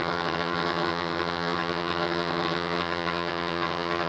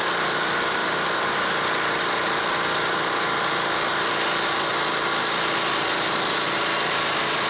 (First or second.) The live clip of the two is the second